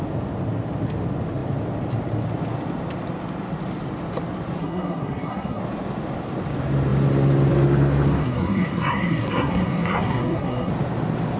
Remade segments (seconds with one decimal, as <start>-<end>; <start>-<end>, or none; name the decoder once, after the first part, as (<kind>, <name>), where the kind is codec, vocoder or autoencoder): 4.6-5.6 (codec, SNAC); 8.2-10.7

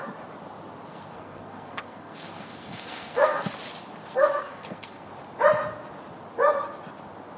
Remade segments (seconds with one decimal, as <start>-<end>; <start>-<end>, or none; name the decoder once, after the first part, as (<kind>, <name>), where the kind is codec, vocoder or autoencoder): 0.9-3.5 (codec, SNAC); 4.0-5.1